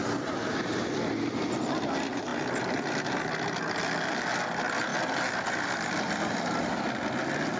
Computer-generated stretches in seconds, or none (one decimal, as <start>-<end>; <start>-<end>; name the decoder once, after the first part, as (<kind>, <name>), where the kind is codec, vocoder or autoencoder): none